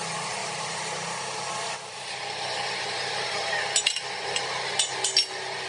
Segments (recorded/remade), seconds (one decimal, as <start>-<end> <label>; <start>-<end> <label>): 0.0-5.7 recorded